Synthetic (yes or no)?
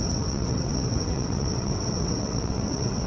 yes